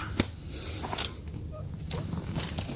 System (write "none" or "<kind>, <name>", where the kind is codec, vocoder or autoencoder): none